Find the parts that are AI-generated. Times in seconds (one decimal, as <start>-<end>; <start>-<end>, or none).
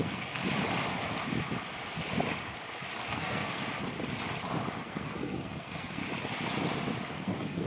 0.0-0.4; 3.1-3.6; 4.8-6.0; 7.1-7.7